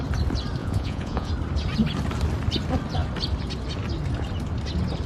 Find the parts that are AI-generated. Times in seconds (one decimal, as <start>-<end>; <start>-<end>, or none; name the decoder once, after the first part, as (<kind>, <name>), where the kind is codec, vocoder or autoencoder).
0.6-1.3 (vocoder, Vocos)